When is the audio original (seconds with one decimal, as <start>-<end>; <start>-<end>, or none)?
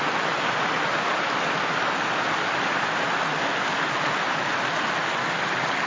0.0-5.9